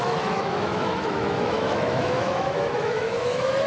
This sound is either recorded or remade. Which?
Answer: remade